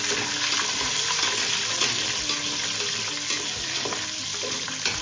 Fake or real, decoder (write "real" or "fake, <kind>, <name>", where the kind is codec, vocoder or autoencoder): real